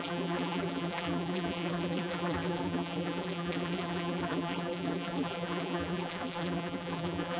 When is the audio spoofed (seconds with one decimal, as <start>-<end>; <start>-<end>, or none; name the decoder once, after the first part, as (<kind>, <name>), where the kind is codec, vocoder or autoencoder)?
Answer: 0.0-7.4 (vocoder, BigVGAN v2)

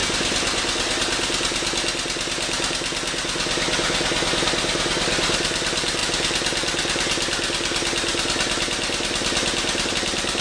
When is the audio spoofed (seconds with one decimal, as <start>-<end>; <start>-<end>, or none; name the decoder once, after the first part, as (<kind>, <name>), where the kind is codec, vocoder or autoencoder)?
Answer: 4.4-6.0 (vocoder, BigVGAN v2); 9.9-10.4

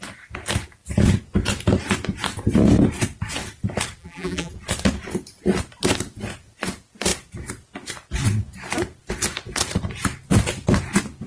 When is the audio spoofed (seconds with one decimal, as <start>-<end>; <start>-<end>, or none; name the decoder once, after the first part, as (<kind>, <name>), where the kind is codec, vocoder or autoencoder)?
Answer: 4.0-4.5 (vocoder, BigVGAN v2)

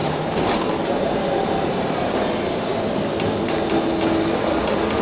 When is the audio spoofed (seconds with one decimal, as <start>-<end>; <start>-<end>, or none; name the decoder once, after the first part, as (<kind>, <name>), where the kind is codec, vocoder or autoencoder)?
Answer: 0.0-2.1 (vocoder, BigVGAN v2)

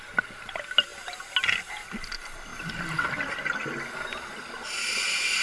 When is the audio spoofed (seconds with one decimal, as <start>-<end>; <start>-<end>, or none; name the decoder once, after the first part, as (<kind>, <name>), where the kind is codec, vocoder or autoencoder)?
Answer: none

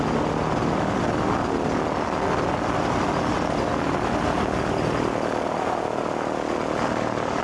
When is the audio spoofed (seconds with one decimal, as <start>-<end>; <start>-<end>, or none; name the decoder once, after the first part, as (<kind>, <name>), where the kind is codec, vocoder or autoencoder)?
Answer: none

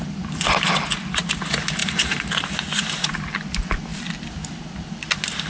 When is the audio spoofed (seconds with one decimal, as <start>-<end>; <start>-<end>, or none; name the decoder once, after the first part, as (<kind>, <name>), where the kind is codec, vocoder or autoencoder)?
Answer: 1.8-2.5 (vocoder, BigVGAN v2)

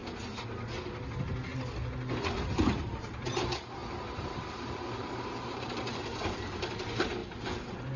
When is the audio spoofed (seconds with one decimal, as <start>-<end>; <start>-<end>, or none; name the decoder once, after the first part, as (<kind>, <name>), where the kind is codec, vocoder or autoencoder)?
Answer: 2.4-7.2 (vocoder, BigVGAN v2)